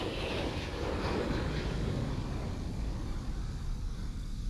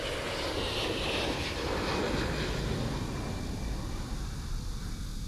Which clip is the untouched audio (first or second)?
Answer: second